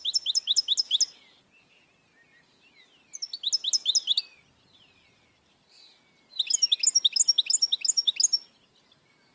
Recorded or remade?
recorded